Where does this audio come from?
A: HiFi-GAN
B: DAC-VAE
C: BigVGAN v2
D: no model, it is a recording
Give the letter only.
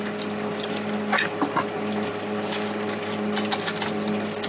D